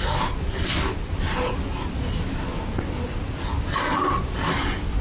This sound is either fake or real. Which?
real